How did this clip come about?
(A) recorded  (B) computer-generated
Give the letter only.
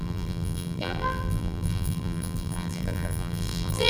B